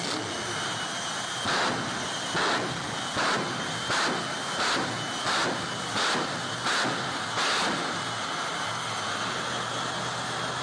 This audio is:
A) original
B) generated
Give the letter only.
A